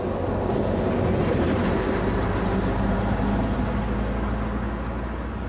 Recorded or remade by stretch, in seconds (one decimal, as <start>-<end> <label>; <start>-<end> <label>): 0.0-1.2 recorded; 1.2-3.2 remade; 3.2-5.5 recorded